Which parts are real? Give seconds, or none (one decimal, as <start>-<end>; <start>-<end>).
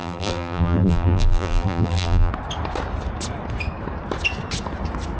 2.3-5.2